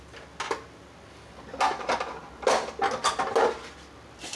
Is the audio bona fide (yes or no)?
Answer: yes